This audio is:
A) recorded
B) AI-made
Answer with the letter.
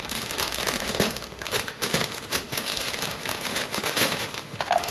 B